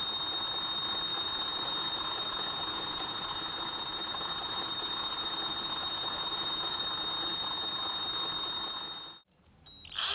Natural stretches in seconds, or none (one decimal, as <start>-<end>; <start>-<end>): 0.0-1.1; 3.5-4.0; 6.8-10.1